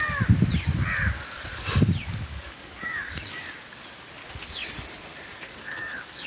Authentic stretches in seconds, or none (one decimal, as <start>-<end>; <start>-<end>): 0.0-2.3; 3.4-4.2; 4.8-5.3